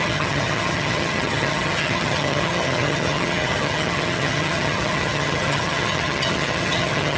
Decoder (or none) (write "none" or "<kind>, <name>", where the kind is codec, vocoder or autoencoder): vocoder, HiFi-GAN